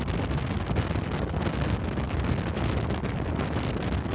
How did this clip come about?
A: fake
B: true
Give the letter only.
B